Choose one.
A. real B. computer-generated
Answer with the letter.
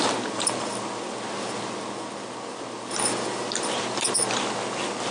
A